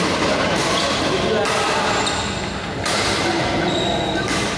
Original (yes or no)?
yes